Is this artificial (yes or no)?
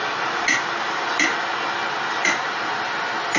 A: no